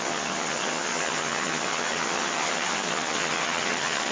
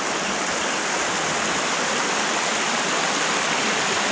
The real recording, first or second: second